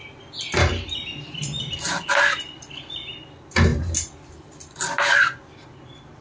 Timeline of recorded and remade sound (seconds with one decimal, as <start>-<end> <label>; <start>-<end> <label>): 0.0-6.2 recorded